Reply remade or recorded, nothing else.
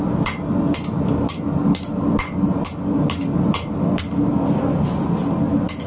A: recorded